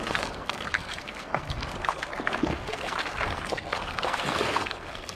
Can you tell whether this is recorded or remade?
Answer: remade